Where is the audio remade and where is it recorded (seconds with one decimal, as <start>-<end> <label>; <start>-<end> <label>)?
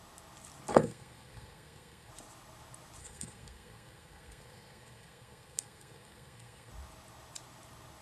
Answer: 0.0-0.7 recorded; 0.7-2.1 remade; 2.1-3.0 recorded; 3.0-6.7 remade; 6.7-8.0 recorded